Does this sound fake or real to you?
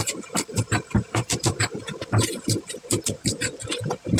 fake